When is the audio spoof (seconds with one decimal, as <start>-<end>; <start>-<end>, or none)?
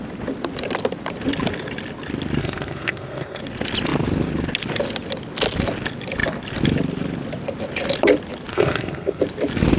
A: 2.4-3.4; 8.5-9.2